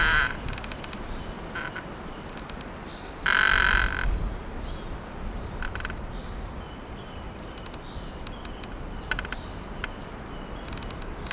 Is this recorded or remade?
recorded